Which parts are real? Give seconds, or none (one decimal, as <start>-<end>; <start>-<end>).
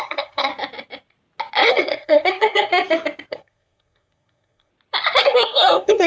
0.5-1.7; 2.7-3.3; 4.7-5.2